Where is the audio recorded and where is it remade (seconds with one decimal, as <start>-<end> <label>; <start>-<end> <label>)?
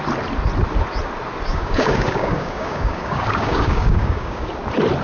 0.0-1.5 recorded; 1.5-4.5 remade; 4.5-5.0 recorded